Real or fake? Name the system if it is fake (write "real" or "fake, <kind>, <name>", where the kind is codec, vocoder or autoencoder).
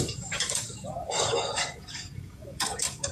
fake, codec, DAC